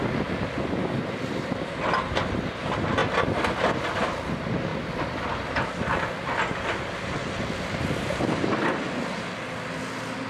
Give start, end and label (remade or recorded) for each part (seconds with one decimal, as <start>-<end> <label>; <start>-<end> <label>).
0.0-4.7 recorded; 4.7-8.2 remade; 8.2-10.3 recorded